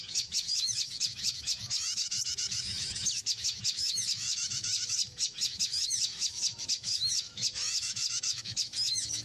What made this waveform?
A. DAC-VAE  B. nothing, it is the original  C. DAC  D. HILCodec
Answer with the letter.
A